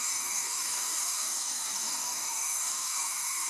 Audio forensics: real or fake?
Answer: fake